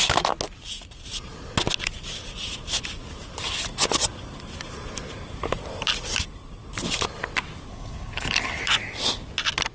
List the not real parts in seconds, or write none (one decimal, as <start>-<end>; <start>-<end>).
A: 7.7-8.6